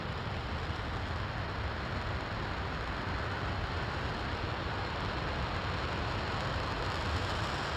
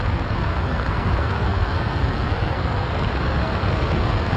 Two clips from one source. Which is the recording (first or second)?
first